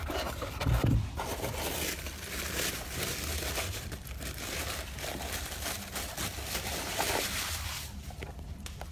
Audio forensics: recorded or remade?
remade